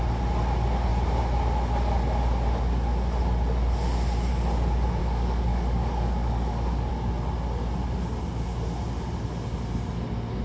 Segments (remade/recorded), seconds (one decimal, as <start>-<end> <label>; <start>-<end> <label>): 0.0-5.0 recorded; 5.0-6.9 remade; 6.9-10.4 recorded